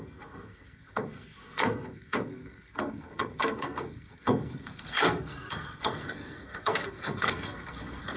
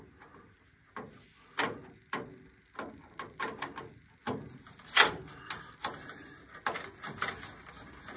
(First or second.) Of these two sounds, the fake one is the first